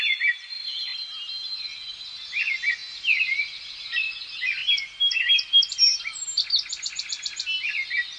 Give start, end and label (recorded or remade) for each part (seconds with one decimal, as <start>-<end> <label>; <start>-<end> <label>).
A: 0.0-8.2 recorded